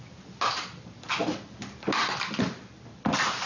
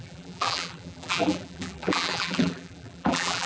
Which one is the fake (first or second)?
second